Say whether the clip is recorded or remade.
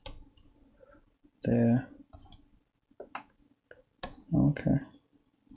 recorded